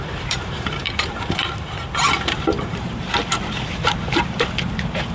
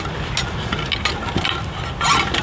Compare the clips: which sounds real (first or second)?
second